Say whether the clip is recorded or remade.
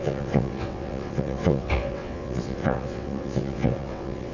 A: remade